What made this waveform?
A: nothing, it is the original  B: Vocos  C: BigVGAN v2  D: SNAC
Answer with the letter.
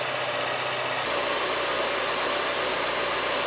A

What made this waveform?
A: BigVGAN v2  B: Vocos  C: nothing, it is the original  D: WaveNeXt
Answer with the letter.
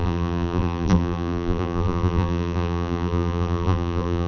A